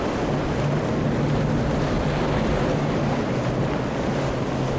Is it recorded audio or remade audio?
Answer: recorded